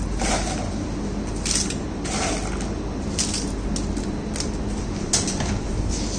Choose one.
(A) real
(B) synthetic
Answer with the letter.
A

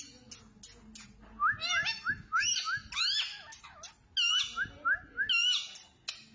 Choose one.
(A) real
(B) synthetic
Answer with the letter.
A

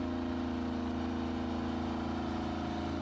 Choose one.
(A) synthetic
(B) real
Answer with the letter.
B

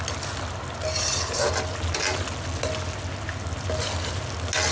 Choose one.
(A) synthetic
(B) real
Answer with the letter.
B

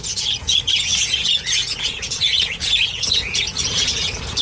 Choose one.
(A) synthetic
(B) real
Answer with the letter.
A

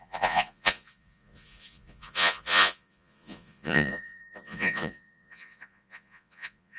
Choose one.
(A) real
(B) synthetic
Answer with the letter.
B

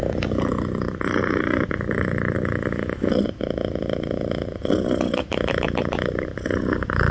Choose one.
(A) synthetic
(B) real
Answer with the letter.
B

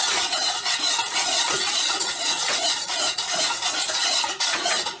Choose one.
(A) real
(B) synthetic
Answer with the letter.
B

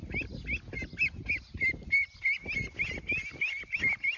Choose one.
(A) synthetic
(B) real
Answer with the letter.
B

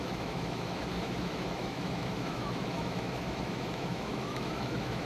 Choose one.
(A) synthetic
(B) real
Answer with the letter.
A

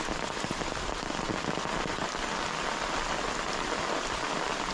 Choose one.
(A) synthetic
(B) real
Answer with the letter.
B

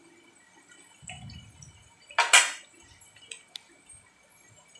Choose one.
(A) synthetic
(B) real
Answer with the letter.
B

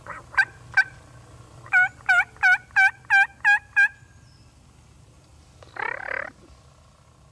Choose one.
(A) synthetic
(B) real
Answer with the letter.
B